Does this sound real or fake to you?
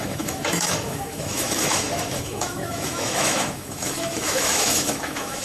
fake